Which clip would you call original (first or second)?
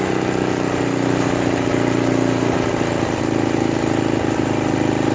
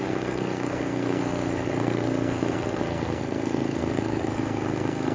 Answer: first